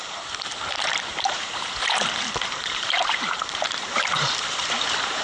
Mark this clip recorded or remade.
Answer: remade